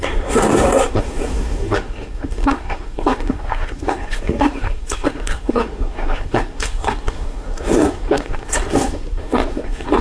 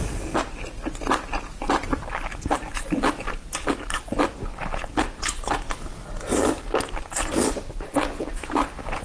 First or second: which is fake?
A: first